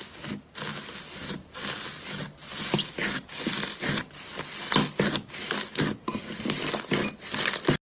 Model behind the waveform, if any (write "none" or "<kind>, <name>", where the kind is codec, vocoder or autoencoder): none